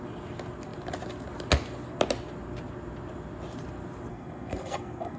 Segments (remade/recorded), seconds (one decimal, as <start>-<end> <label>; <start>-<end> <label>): 0.0-4.1 recorded; 4.1-5.2 remade